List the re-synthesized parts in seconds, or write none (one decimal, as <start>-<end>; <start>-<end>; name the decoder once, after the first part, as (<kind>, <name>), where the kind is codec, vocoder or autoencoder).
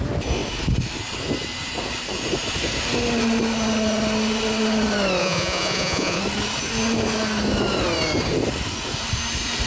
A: 5.2-6.2 (vocoder, Vocos)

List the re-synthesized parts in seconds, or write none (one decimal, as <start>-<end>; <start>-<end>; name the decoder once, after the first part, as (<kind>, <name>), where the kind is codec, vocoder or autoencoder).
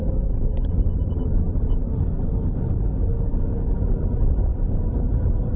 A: none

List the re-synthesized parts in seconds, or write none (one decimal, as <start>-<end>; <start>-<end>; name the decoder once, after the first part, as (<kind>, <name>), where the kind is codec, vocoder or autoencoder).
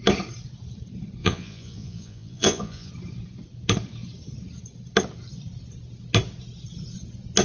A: 1.2-2.9 (vocoder, Vocos)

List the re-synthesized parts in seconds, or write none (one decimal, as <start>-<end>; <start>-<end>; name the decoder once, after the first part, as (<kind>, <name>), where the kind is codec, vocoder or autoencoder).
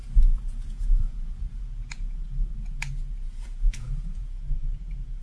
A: 0.0-5.2 (vocoder, Vocos)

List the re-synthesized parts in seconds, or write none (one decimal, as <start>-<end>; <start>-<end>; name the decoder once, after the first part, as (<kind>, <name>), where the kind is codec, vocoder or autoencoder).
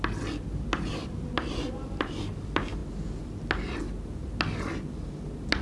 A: none